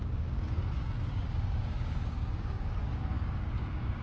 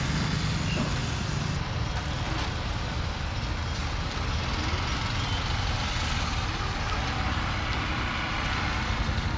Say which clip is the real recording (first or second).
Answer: second